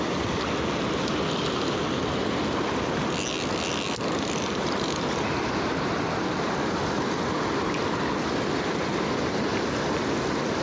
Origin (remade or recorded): recorded